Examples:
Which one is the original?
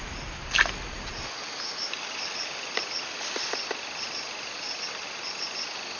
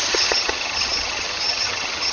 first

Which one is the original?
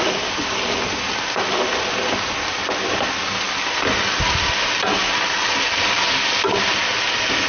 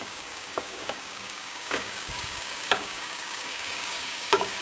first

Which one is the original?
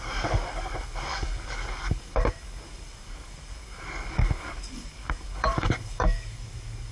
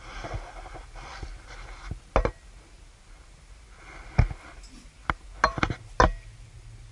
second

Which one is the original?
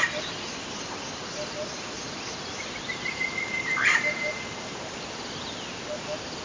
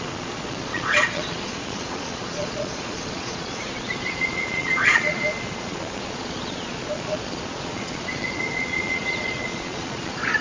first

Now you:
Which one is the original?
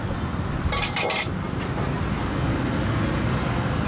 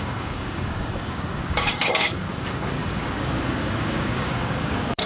first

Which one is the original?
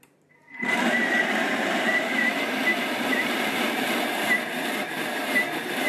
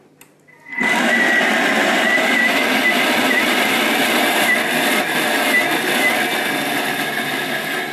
second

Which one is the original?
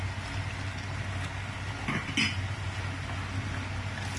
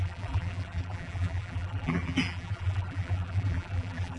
first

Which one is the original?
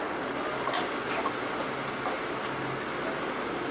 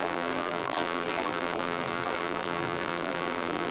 first